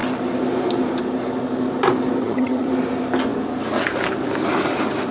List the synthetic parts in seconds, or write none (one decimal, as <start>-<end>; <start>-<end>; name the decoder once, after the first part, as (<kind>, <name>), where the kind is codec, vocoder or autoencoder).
2.2-2.7 (vocoder, HiFi-GAN)